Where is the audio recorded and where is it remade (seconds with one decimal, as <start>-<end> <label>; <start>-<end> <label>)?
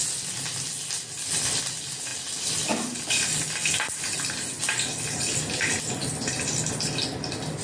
0.0-7.6 recorded